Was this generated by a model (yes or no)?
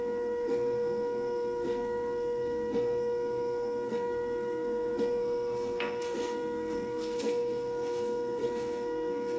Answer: yes